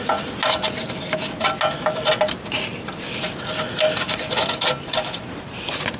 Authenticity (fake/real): real